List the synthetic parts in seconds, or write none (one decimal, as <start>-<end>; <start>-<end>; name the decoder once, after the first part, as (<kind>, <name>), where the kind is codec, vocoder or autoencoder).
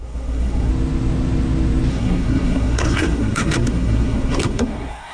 0.0-0.7 (codec, SNAC); 1.9-5.1